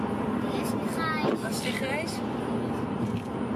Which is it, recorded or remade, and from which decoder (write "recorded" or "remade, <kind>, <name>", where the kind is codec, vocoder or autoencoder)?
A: recorded